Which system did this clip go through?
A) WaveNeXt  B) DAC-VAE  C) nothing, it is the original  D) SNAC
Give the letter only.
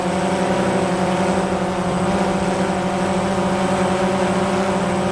C